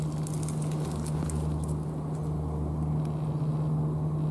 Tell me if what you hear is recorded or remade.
recorded